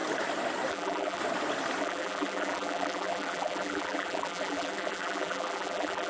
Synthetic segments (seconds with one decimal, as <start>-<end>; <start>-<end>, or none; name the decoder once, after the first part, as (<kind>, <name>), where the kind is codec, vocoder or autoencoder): 0.7-1.2 (vocoder, BigVGAN v2); 1.8-6.1